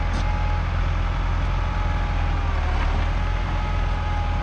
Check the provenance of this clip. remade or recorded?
recorded